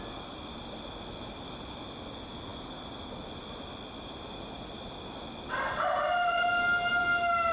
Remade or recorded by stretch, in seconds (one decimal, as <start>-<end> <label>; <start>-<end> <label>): 0.0-7.5 recorded